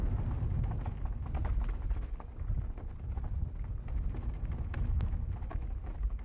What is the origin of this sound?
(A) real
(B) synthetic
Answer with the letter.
A